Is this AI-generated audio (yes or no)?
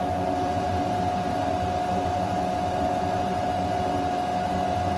no